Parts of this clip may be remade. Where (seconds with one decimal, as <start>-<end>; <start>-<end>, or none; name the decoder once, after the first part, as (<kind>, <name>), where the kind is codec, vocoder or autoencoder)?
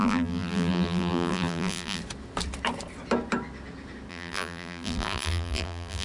0.0-2.0 (vocoder, BigVGAN v2); 4.1-6.0